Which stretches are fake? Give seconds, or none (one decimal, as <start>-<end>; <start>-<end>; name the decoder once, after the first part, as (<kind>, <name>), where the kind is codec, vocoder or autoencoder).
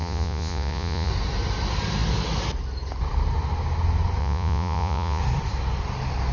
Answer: 0.0-1.1 (vocoder, Vocos); 4.2-5.2